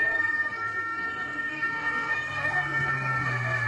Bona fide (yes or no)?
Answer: no